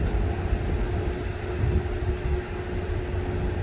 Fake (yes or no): no